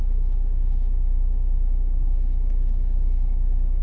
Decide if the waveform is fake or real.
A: fake